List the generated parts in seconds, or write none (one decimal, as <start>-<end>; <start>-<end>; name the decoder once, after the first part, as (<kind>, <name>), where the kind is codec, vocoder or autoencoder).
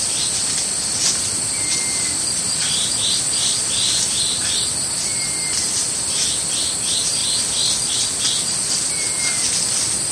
none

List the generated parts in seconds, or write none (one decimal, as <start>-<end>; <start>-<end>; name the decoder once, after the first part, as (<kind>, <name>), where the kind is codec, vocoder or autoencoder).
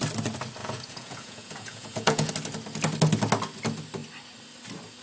0.6-2.3 (vocoder, Vocos)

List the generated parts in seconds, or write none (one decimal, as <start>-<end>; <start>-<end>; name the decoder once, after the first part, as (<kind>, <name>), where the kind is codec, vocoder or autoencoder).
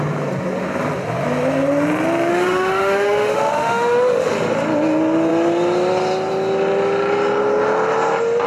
2.3-4.3 (autoencoder, DAC-VAE)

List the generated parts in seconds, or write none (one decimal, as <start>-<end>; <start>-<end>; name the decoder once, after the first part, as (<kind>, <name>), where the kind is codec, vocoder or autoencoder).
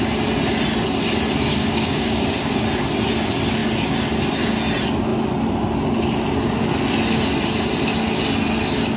1.5-2.6 (codec, DAC)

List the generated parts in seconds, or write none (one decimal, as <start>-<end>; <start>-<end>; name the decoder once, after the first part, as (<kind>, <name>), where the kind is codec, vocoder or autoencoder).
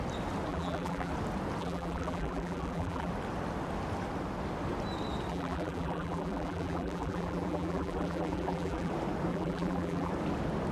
0.5-1.1 (vocoder, BigVGAN v2); 1.6-3.1; 5.3-8.9; 9.3-10.1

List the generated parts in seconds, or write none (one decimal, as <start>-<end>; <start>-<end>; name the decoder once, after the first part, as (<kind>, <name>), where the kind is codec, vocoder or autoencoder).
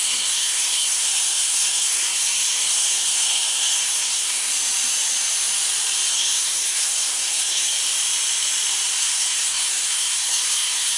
0.0-4.5 (codec, SNAC); 6.1-7.7; 9.0-11.0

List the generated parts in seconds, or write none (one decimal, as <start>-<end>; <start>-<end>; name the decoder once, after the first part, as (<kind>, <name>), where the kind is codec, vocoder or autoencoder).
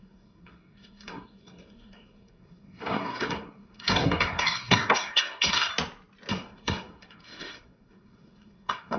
0.0-5.7 (codec, SNAC); 6.3-9.0